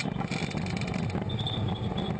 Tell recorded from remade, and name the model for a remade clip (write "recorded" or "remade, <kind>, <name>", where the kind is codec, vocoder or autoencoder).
recorded